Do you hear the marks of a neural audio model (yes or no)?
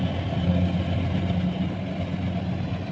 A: no